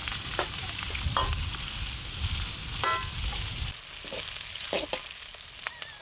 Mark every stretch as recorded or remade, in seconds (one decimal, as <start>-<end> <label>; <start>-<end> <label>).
0.0-1.3 remade; 1.3-6.0 recorded